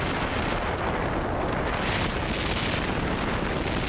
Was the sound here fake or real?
real